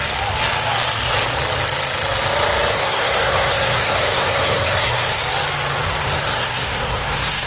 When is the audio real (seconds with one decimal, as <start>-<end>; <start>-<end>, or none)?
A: 0.0-2.7; 5.2-6.0